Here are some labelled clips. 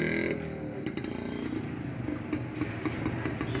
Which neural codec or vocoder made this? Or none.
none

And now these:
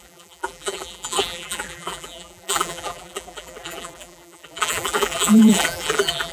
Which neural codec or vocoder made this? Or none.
vocoder, BigVGAN v2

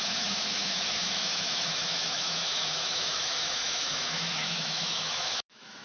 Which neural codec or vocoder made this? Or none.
autoencoder, DAC-VAE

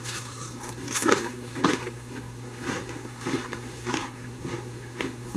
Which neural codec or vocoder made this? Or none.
codec, SNAC